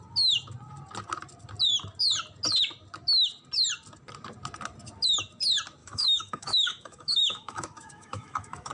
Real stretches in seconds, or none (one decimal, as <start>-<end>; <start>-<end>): 0.0-5.8